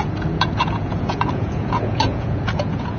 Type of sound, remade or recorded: remade